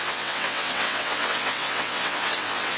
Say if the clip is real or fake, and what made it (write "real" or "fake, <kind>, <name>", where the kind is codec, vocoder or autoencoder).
fake, vocoder, WaveNeXt